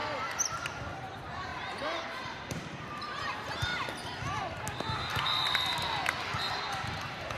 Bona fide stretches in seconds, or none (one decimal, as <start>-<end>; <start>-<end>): 0.0-0.6; 3.7-6.7